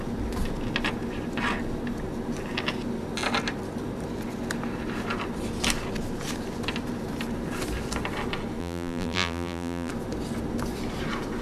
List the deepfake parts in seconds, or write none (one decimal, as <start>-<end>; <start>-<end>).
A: 8.6-9.9